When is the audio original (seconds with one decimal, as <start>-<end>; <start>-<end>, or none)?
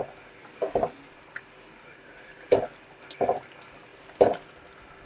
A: 0.0-0.4; 1.0-5.1